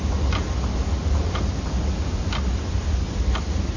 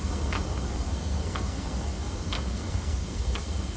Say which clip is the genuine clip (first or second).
first